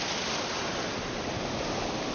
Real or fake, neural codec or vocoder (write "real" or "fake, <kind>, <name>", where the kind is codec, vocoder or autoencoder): real